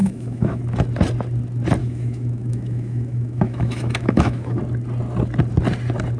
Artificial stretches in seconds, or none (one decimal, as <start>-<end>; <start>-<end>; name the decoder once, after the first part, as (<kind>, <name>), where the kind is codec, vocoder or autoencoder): 0.0-0.6 (autoencoder, DAC-VAE); 1.8-4.6